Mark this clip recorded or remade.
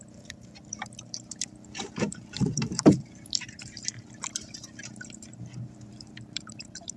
remade